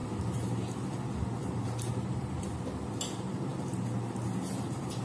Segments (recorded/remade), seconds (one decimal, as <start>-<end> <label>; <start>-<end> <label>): 0.0-5.0 recorded